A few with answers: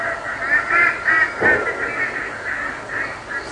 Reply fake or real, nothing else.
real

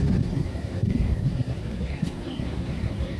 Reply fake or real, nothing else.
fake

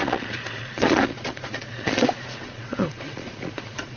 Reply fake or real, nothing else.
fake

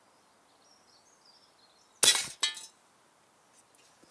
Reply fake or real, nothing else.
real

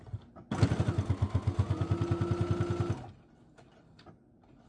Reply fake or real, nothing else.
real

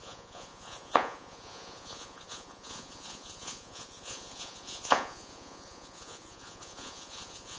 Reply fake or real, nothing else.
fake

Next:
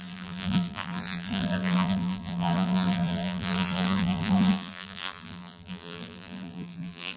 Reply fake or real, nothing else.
fake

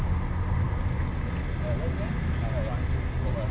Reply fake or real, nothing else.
real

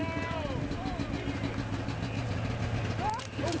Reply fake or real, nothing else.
real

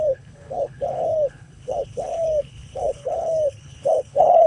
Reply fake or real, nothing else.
fake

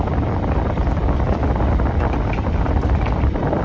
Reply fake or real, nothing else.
fake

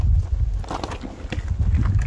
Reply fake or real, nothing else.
real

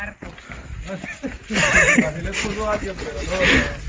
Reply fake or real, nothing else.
real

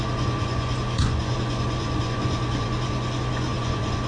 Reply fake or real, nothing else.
fake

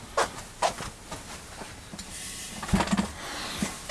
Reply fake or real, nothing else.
real